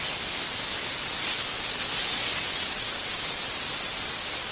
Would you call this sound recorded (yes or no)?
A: yes